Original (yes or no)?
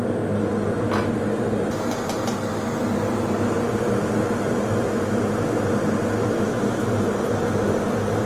yes